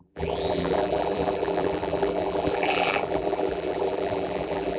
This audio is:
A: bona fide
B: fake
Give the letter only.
B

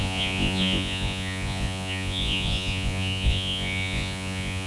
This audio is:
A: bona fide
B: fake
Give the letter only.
B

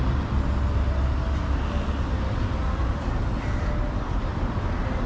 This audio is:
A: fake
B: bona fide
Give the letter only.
B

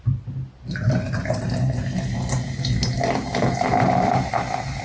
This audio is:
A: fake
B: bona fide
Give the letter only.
B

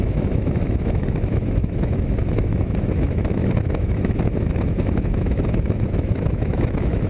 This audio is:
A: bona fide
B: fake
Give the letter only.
B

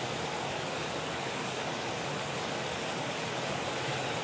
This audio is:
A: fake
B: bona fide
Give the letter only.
A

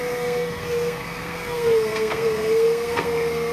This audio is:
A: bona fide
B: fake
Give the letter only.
B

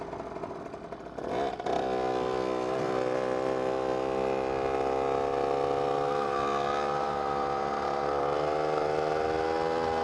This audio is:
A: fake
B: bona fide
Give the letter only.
B